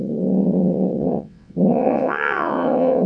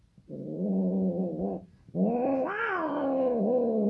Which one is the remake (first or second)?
first